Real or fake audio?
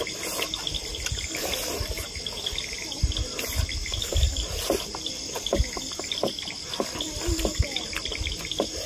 real